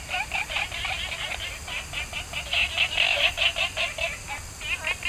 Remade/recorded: recorded